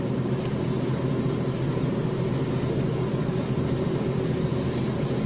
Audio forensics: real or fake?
real